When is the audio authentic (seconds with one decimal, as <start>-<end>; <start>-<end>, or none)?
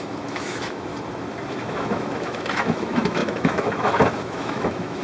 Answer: 0.9-1.5